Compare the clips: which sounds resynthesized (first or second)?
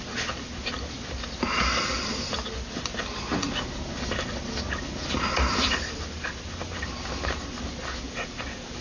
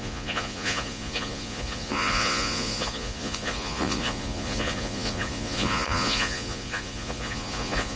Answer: second